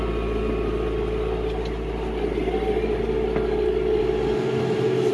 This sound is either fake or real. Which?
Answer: real